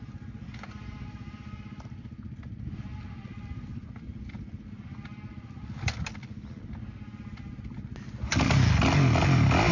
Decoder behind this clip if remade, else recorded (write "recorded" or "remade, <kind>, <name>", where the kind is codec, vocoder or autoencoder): recorded